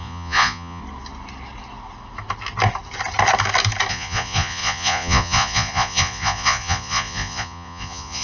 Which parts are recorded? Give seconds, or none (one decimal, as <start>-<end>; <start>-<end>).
0.8-3.9